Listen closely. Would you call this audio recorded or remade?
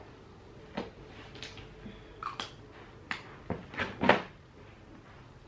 recorded